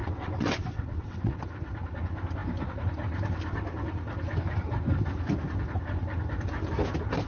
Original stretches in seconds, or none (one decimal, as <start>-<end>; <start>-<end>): 1.4-7.3